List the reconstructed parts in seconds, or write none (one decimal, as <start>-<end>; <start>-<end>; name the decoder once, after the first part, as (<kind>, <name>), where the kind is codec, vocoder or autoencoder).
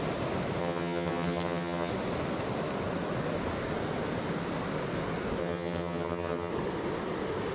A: 0.6-1.9 (vocoder, HiFi-GAN); 5.4-6.5